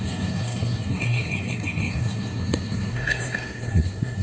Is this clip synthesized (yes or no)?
yes